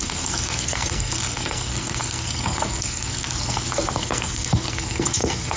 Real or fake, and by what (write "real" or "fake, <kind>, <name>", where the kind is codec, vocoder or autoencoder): fake, codec, SNAC